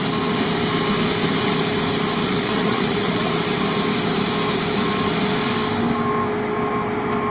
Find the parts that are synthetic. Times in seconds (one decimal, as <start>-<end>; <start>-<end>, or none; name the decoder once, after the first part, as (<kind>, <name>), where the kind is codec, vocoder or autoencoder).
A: 2.2-3.3 (vocoder, Vocos)